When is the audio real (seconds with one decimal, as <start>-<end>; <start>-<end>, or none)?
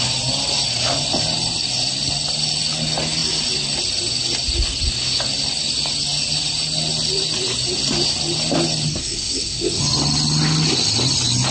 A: 0.0-9.0; 9.8-11.5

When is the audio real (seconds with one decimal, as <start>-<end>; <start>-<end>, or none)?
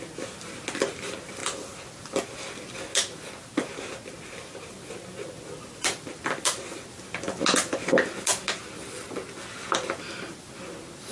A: 0.0-11.1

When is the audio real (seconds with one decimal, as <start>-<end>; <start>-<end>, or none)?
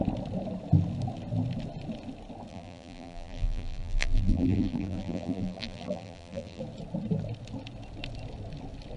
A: 0.0-2.5; 6.6-9.0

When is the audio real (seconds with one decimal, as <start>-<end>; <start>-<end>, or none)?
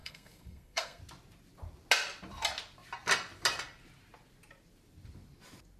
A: 1.0-5.8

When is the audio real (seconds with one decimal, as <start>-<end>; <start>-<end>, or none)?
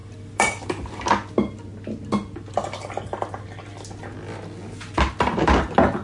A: 0.0-6.0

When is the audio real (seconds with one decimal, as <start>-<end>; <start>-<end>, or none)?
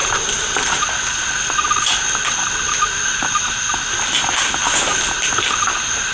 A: 0.0-6.1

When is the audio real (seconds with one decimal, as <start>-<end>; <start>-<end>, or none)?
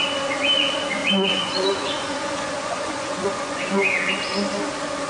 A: 0.0-1.0; 4.1-5.1